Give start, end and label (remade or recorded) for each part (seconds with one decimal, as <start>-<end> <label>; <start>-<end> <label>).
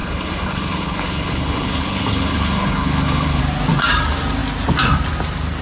0.0-3.4 remade; 3.4-5.6 recorded